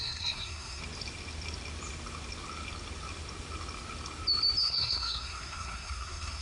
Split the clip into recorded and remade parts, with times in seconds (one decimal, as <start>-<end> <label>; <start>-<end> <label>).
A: 0.0-0.8 remade; 0.8-4.6 recorded; 4.6-6.4 remade